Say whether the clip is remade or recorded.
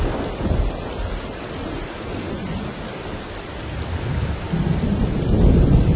remade